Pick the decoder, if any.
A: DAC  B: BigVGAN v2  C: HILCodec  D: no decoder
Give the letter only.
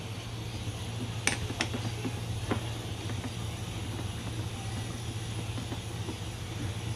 D